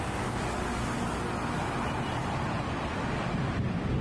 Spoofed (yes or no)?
no